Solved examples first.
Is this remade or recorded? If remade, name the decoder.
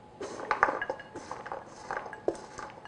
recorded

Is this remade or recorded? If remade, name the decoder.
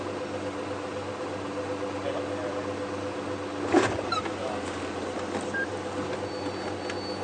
recorded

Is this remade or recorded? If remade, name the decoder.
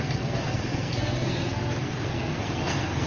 remade, codec, SNAC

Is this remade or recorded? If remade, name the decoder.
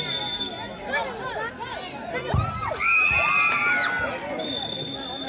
recorded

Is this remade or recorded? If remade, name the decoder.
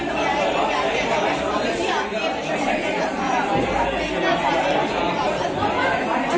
recorded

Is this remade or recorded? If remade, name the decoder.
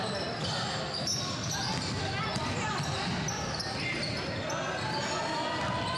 recorded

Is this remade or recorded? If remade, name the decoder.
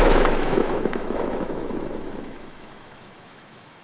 remade, autoencoder, DAC-VAE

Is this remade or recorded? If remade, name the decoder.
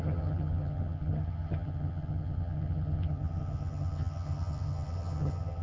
remade, vocoder, HiFi-GAN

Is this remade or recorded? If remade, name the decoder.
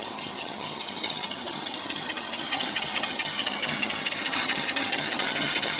remade, vocoder, HiFi-GAN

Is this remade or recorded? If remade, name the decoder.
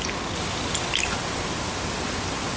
recorded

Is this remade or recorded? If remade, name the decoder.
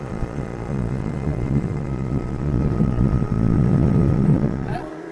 remade, vocoder, Vocos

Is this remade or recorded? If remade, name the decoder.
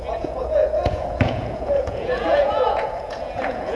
remade, vocoder, Vocos